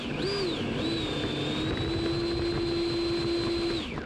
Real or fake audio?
real